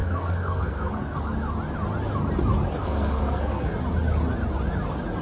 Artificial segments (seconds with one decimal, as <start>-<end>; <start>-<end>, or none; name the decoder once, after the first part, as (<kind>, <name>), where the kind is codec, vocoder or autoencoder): 0.0-1.2 (codec, SNAC); 2.8-3.7